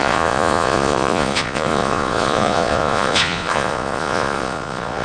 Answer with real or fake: fake